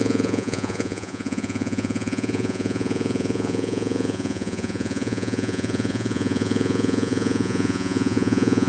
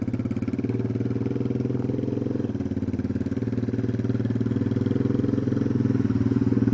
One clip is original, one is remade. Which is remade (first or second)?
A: first